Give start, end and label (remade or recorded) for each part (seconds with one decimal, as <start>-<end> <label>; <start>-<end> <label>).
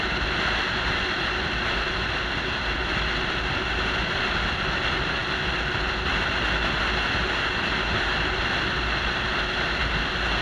0.0-10.4 recorded